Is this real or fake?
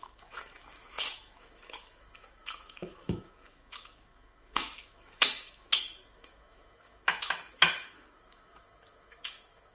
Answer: fake